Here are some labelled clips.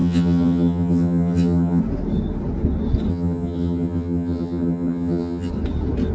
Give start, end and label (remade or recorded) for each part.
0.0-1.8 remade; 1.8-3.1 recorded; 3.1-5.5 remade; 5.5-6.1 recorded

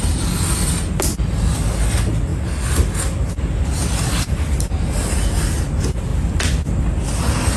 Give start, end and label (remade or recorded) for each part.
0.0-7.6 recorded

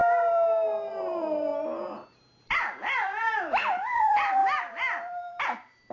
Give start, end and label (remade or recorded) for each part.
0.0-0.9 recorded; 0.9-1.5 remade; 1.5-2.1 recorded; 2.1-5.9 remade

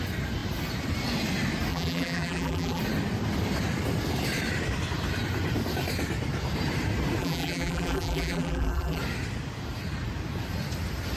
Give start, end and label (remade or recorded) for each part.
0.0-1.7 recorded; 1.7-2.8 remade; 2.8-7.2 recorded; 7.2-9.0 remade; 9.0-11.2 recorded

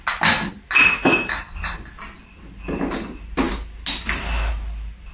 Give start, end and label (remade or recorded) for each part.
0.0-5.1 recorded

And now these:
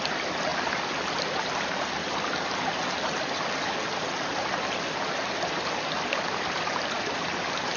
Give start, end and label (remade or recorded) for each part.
0.0-7.8 recorded